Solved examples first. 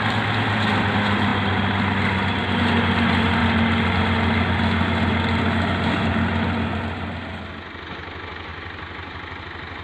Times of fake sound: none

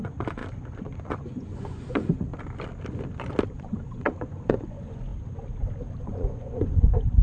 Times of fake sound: 0.0-2.3 (vocoder, Vocos); 3.5-5.1; 6.0-7.2

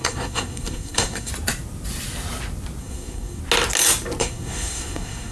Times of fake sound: 0.0-1.3 (codec, SNAC); 2.8-3.4; 4.2-5.3